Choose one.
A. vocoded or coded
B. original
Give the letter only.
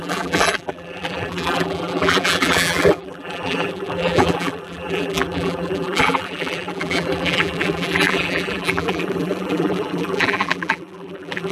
A